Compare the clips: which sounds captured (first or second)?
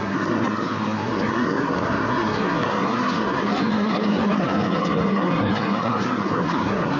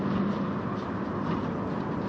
second